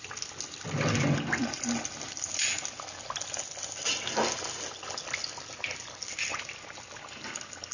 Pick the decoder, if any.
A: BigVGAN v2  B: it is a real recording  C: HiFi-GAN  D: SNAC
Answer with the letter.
B